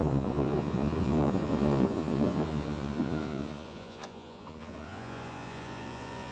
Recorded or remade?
remade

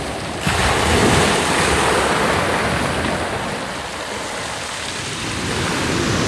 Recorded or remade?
recorded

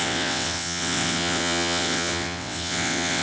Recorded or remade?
remade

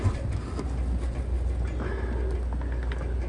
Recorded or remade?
recorded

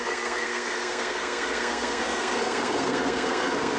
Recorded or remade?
remade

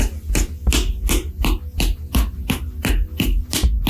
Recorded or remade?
recorded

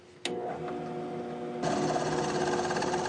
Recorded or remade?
recorded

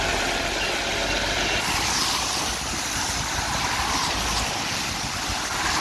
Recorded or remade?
recorded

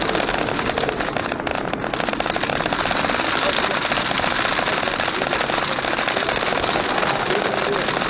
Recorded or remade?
recorded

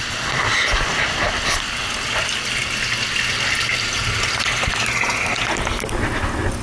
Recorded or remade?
recorded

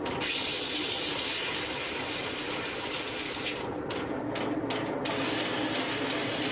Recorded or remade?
recorded